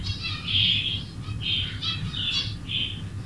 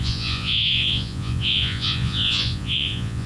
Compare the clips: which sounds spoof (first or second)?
second